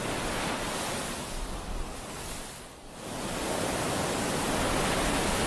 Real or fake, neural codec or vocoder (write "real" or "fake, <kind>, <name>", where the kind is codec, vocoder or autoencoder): real